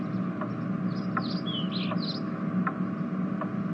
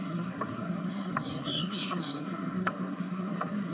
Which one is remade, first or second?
second